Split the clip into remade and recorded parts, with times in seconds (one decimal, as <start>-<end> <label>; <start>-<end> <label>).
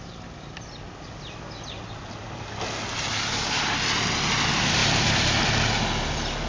0.0-6.5 recorded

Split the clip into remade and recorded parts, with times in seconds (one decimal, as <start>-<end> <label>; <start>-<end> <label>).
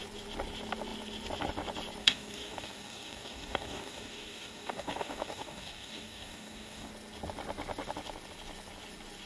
0.0-2.0 recorded; 2.0-6.9 remade; 6.9-9.3 recorded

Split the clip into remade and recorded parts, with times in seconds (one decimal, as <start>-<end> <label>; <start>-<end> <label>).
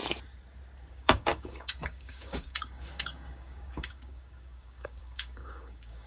0.0-0.9 recorded; 0.9-6.1 remade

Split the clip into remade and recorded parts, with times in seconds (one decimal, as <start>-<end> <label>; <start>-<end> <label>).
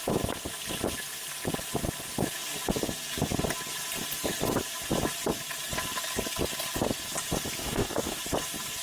0.0-7.6 recorded; 7.6-8.2 remade; 8.2-8.8 recorded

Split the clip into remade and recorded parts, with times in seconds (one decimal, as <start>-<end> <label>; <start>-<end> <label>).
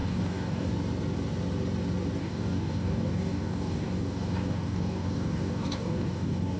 0.0-0.7 remade; 0.7-2.2 recorded; 2.2-6.6 remade